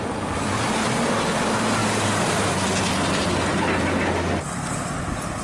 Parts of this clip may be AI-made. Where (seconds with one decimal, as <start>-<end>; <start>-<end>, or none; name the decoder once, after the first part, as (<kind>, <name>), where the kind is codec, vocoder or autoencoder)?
1.8-2.5 (vocoder, BigVGAN v2)